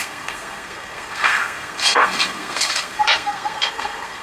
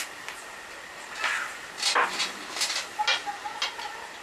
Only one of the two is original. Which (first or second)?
second